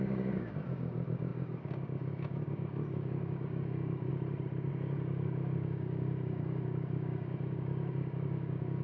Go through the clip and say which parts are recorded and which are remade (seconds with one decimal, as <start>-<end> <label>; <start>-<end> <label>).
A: 0.0-4.1 remade; 4.1-4.7 recorded; 4.7-8.8 remade